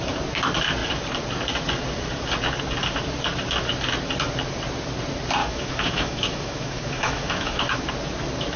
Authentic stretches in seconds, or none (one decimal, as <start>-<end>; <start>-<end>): 0.0-5.4; 7.9-8.6